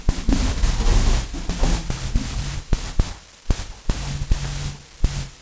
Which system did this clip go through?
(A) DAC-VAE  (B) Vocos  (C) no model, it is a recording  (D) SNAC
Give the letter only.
C